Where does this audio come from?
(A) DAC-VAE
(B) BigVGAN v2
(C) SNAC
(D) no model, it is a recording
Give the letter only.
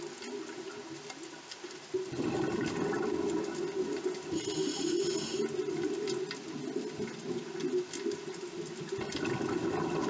D